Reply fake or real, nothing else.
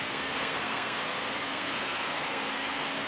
fake